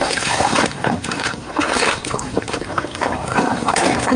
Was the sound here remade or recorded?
remade